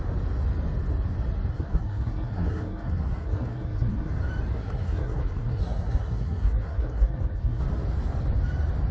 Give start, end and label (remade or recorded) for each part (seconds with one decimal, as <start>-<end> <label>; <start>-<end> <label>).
0.0-1.5 recorded; 1.5-4.1 remade; 4.1-4.6 recorded; 4.6-7.6 remade; 7.6-8.9 recorded